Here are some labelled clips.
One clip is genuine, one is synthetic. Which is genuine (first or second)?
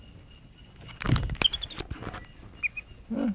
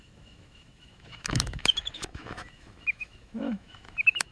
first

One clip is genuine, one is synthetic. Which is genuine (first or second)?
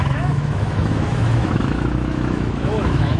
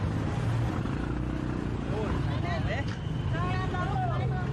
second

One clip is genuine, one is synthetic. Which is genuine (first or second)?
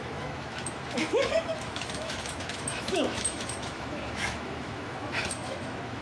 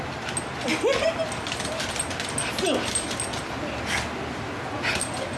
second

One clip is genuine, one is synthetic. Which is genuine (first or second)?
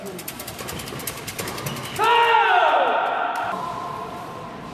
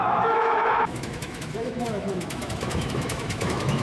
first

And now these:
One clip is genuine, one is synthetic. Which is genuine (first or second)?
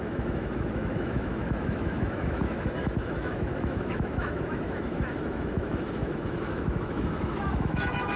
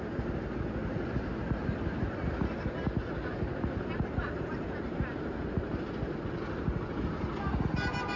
second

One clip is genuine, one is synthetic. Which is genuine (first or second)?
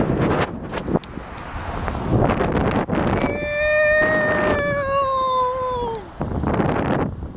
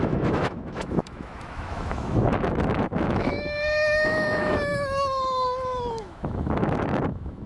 first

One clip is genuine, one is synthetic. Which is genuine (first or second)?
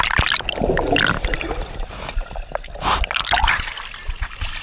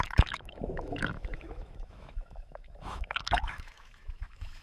first